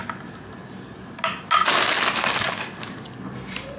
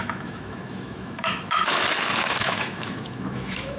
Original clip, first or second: first